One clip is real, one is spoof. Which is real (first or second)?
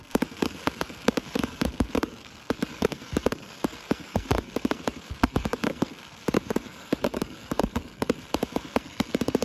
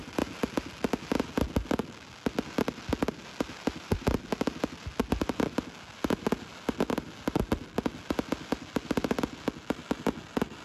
second